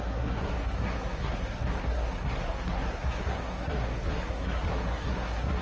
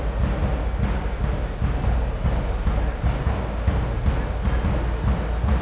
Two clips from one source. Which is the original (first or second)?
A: second